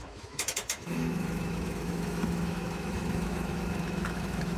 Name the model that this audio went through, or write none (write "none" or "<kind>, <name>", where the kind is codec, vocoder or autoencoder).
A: autoencoder, DAC-VAE